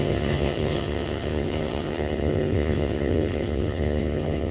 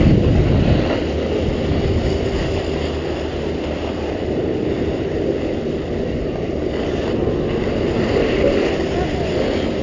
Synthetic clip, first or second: first